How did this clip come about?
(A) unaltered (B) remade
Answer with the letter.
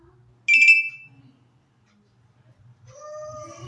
A